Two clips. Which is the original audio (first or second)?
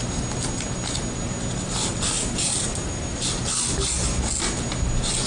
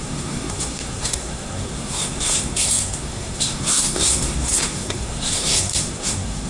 first